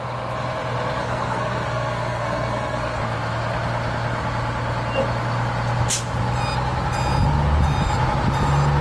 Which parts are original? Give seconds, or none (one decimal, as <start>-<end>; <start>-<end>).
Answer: 0.0-1.0; 3.0-8.8